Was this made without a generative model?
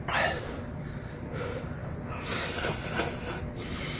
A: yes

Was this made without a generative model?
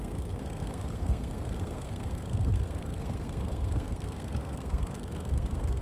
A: no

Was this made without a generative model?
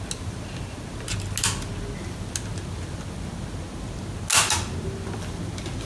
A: yes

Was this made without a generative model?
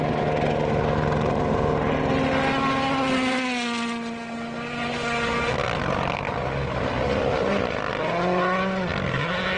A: yes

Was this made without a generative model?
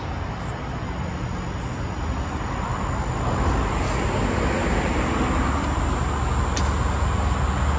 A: yes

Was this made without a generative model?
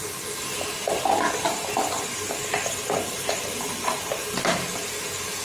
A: yes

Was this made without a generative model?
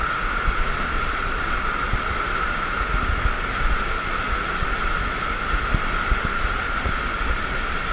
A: yes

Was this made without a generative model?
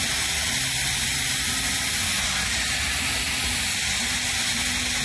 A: yes